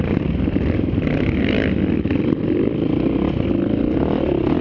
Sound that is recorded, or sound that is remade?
recorded